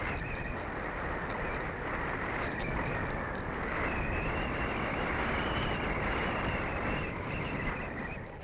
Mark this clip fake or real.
real